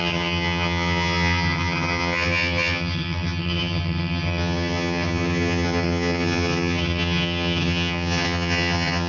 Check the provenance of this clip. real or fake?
fake